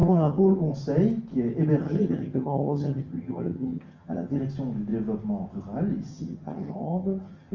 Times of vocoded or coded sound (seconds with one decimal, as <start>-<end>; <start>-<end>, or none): 0.0-0.7; 1.8-4.4; 6.1-7.5